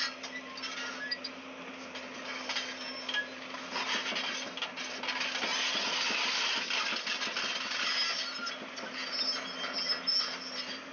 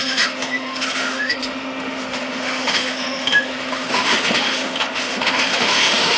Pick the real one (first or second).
first